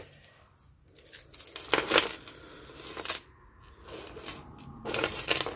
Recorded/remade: recorded